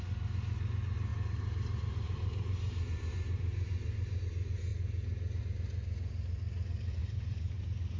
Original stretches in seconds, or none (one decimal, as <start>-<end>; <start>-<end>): 0.0-1.1; 4.2-7.0; 7.6-8.0